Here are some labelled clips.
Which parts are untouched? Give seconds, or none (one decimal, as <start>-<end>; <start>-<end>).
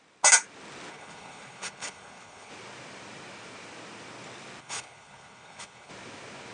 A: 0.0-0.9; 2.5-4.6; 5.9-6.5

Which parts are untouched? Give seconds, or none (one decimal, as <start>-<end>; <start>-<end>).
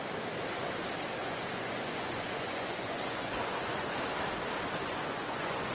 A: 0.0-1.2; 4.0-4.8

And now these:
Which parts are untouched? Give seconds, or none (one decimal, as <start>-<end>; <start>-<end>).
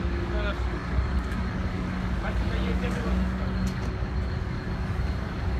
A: none